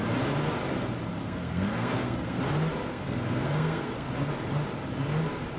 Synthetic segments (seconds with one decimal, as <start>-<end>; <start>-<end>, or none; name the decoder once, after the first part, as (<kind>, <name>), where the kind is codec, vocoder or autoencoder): 1.2-2.4 (codec, SNAC); 2.9-4.1